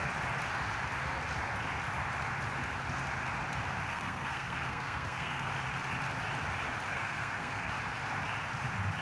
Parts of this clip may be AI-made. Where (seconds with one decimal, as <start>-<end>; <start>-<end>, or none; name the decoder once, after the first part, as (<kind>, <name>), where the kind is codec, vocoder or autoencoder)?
3.9-5.5 (codec, SNAC); 6.9-7.7